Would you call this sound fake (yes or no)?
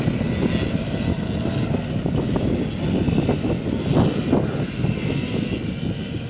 no